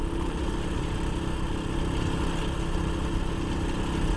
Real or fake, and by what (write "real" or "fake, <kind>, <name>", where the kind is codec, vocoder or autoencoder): real